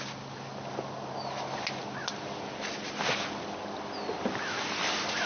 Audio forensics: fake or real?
real